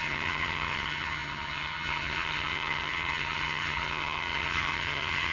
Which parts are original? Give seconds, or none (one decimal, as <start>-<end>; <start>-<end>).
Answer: none